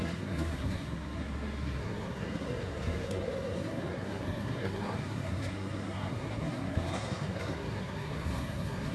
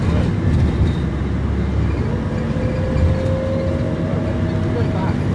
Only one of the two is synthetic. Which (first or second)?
first